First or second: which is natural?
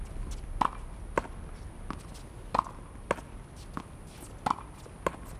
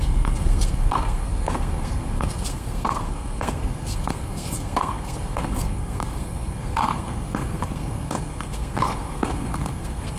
first